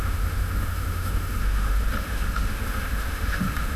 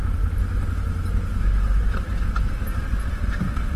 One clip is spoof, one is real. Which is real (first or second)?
second